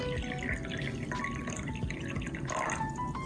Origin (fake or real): real